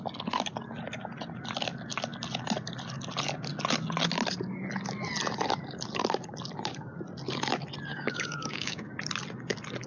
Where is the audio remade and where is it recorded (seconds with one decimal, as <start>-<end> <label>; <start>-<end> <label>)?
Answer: 0.0-7.9 recorded; 7.9-8.9 remade; 8.9-9.9 recorded